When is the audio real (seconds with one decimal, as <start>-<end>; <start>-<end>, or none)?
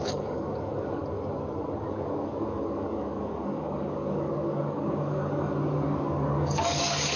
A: 1.0-1.9